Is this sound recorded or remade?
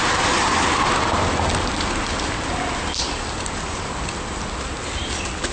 recorded